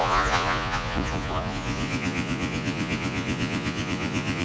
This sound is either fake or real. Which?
fake